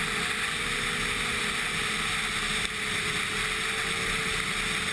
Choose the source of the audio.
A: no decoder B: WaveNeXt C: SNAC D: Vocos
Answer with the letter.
A